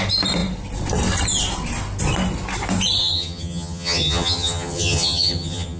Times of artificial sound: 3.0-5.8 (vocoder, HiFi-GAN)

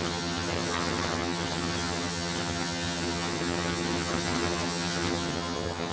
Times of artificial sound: 0.0-5.9 (vocoder, HiFi-GAN)